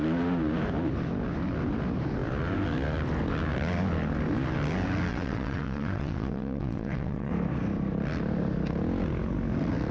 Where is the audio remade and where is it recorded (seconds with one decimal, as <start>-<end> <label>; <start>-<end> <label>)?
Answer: 0.0-5.1 recorded; 5.1-7.3 remade; 7.3-9.9 recorded